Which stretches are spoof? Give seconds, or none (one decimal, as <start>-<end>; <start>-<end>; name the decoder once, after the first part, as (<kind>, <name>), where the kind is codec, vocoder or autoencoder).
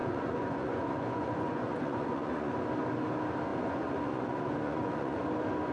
0.0-2.5 (vocoder, Vocos); 3.5-5.2